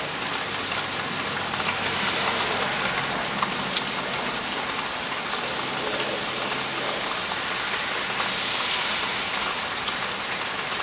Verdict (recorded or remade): recorded